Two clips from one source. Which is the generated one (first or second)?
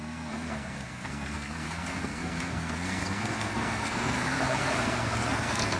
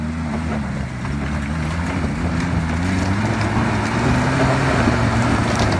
first